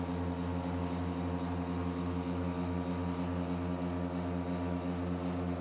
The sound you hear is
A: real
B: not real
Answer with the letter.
A